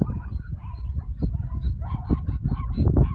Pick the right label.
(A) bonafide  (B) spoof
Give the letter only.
A